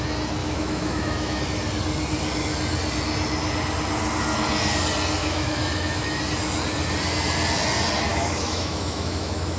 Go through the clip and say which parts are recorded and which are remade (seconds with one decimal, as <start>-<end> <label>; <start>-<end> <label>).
0.0-0.4 recorded; 0.4-1.4 remade; 1.4-5.2 recorded; 5.2-6.2 remade; 6.2-8.1 recorded; 8.1-9.6 remade